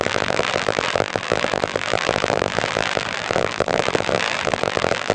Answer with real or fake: fake